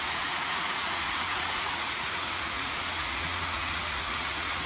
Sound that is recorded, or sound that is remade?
remade